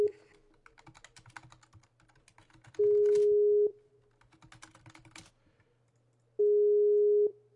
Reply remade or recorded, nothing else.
recorded